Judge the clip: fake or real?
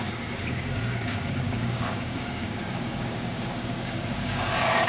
fake